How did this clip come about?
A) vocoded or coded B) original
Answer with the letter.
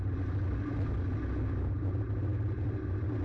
B